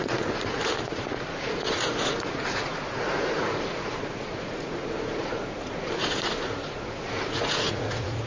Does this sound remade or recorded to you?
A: remade